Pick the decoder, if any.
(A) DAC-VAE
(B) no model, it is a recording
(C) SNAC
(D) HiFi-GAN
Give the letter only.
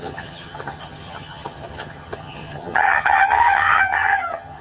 D